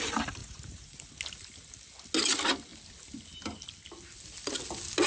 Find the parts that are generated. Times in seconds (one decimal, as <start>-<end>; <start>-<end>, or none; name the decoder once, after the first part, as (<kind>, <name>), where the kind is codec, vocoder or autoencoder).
0.4-1.0 (vocoder, Vocos)